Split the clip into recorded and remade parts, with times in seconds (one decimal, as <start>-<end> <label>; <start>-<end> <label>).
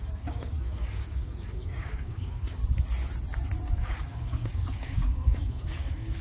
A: 0.0-2.6 remade; 2.6-3.7 recorded; 3.7-6.2 remade